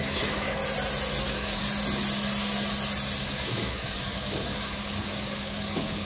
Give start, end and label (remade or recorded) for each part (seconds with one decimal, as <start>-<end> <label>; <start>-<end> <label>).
0.0-0.6 remade; 0.6-1.2 recorded; 1.2-1.6 remade; 1.6-3.2 recorded; 3.2-6.0 remade